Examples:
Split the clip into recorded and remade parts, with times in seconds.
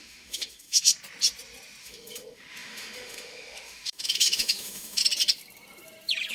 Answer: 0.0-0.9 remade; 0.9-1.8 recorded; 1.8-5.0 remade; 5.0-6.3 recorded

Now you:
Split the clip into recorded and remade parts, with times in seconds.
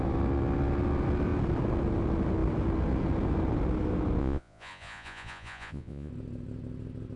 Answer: 0.0-4.2 recorded; 4.2-6.1 remade; 6.1-7.2 recorded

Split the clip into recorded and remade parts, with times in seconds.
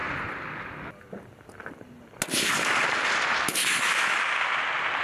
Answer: 0.0-3.6 recorded; 3.6-4.2 remade; 4.2-5.0 recorded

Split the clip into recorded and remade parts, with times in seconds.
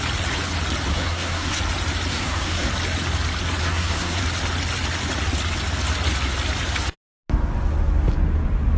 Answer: 0.0-0.9 recorded; 0.9-1.6 remade; 1.6-2.1 recorded; 2.1-2.7 remade; 2.7-3.6 recorded; 3.6-4.2 remade; 4.2-8.8 recorded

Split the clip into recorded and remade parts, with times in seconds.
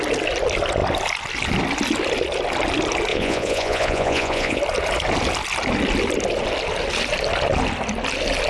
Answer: 0.0-3.1 recorded; 3.1-4.6 remade; 4.6-8.5 recorded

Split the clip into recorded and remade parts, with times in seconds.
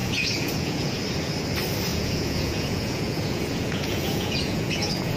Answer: 0.0-1.0 remade; 1.0-1.9 recorded; 1.9-5.2 remade